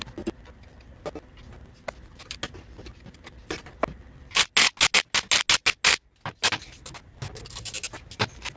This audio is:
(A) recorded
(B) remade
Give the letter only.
A